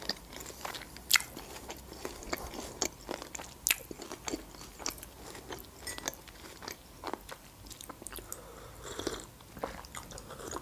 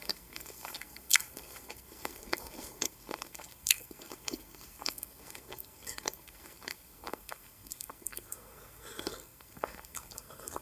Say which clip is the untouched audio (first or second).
first